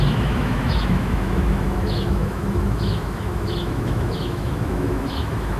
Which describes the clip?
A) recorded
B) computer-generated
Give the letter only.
B